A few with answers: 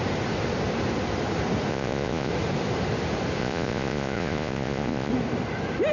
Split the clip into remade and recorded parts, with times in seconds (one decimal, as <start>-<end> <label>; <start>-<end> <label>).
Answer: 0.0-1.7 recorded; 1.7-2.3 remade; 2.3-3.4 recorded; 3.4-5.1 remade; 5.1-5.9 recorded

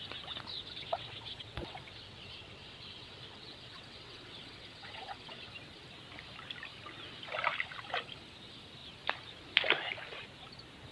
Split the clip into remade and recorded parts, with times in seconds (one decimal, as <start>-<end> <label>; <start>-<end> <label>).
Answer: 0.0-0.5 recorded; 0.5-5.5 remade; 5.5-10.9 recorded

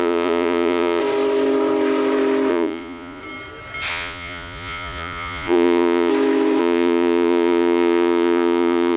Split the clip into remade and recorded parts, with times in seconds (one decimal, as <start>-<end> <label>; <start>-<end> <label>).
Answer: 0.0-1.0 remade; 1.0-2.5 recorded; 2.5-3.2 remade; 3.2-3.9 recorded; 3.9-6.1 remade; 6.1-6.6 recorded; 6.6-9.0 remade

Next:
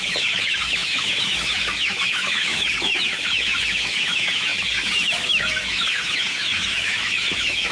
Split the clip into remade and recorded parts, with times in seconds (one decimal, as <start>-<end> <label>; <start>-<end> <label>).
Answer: 0.0-7.7 remade